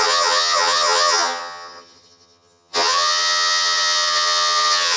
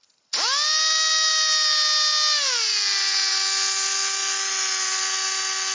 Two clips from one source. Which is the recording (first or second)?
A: second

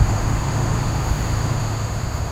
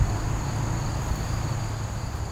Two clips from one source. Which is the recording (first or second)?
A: second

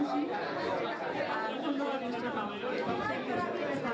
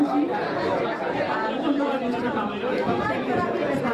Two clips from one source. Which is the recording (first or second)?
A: first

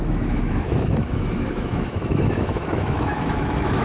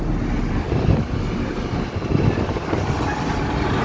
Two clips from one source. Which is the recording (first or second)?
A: second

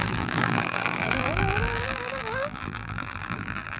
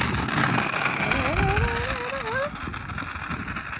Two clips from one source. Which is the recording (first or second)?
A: second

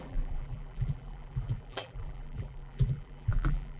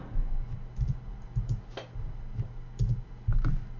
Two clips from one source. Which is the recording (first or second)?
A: second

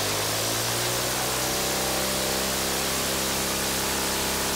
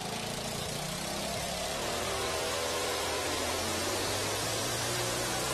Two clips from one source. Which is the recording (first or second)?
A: first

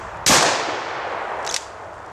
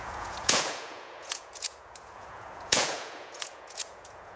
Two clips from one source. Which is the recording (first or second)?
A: first